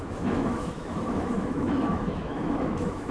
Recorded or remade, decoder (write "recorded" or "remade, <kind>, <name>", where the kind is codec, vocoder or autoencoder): remade, autoencoder, DAC-VAE